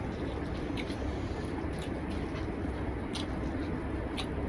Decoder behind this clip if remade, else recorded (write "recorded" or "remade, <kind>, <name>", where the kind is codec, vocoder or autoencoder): recorded